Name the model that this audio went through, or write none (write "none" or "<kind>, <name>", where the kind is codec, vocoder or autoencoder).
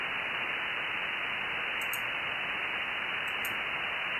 none